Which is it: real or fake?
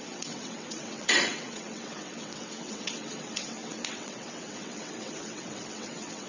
fake